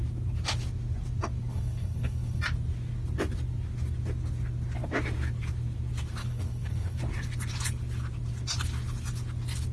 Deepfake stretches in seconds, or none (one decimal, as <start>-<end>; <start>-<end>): 1.5-2.4; 6.2-7.0